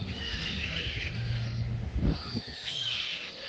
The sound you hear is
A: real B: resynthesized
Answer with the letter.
B